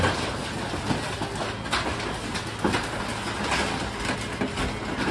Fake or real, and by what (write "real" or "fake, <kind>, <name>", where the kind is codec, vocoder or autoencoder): real